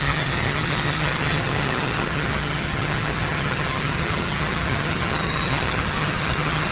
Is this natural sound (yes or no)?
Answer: no